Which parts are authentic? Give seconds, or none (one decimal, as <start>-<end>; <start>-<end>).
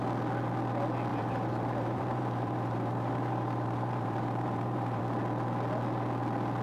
0.0-1.1; 5.0-6.6